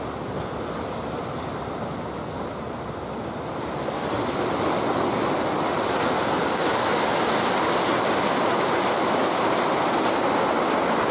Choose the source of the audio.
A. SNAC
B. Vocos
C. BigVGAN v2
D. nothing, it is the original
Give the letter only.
D